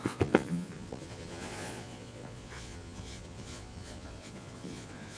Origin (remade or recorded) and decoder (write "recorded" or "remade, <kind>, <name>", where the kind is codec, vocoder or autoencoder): remade, vocoder, Vocos